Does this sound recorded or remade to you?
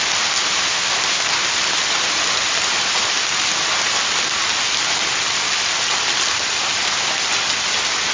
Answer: recorded